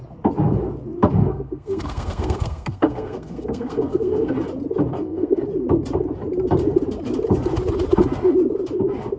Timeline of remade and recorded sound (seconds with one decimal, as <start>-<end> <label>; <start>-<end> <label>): 0.0-1.3 recorded; 1.3-4.3 remade; 4.3-4.9 recorded; 4.9-5.4 remade; 5.4-9.2 recorded